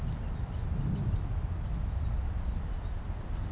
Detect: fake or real real